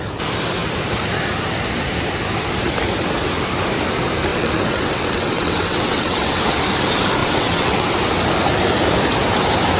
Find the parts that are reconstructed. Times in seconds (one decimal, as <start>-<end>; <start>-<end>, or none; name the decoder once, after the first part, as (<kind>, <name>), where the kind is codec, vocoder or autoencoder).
4.3-6.4 (vocoder, WaveNeXt); 7.2-7.9

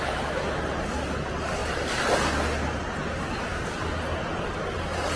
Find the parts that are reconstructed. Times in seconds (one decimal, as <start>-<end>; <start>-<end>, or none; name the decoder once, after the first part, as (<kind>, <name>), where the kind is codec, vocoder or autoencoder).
none

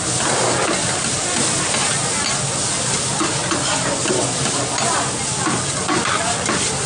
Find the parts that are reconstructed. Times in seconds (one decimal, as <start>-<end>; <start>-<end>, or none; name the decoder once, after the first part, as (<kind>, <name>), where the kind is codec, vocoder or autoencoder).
none

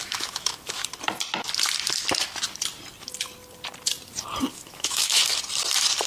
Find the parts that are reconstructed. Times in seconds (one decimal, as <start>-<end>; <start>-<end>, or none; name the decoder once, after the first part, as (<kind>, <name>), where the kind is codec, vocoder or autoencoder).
0.0-0.8 (autoencoder, DAC-VAE); 4.5-5.2

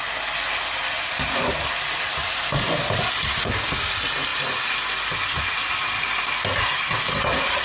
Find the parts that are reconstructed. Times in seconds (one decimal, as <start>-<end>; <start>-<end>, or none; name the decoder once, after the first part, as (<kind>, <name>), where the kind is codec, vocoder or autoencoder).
3.3-3.9 (codec, DAC)

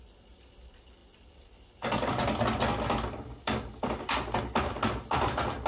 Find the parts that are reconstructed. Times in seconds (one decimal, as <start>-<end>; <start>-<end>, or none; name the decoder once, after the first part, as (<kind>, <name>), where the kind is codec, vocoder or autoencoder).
none

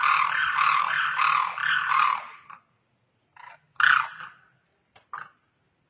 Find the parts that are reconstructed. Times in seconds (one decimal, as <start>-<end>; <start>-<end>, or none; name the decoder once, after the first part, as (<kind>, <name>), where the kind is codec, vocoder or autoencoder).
none

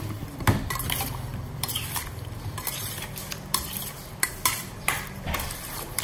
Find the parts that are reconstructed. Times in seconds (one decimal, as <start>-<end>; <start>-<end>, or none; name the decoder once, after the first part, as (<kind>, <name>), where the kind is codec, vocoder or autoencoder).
1.3-4.9 (vocoder, BigVGAN v2)